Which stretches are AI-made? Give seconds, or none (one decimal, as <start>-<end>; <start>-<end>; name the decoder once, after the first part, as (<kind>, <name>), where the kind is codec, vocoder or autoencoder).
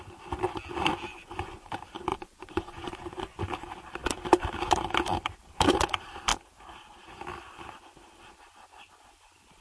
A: 1.1-1.7 (vocoder, Vocos); 2.1-3.4